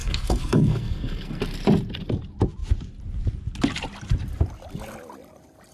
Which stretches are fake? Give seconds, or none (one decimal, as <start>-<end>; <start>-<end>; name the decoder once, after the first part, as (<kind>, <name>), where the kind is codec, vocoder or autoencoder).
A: 0.0-1.4 (codec, SNAC)